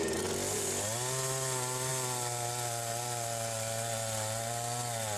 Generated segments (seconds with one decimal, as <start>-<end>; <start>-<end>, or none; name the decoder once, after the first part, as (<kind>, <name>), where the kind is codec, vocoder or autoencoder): none